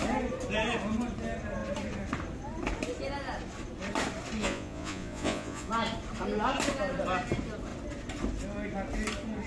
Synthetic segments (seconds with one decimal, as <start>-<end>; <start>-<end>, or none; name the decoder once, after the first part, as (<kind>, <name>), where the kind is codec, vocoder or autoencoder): 4.4-5.7 (vocoder, Vocos)